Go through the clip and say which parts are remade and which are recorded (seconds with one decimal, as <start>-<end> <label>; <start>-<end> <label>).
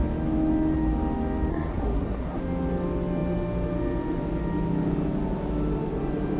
0.0-1.5 recorded; 1.5-2.4 remade; 2.4-6.4 recorded